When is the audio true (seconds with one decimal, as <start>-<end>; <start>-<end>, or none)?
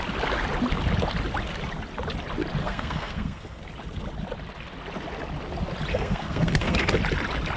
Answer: 0.0-2.6; 3.6-5.9; 7.0-7.6